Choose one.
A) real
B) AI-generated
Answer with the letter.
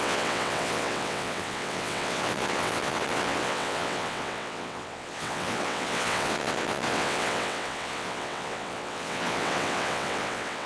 B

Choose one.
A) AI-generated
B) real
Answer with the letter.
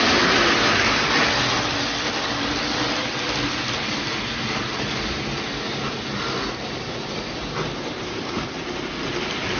B